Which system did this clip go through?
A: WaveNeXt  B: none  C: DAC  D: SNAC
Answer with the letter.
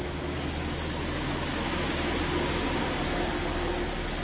B